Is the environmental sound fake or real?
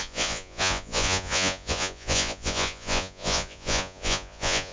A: fake